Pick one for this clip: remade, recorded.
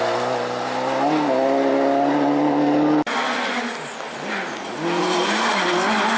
recorded